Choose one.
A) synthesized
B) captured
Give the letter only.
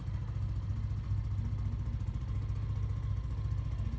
B